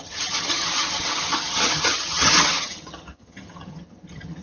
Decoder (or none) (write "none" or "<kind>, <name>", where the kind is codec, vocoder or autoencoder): vocoder, HiFi-GAN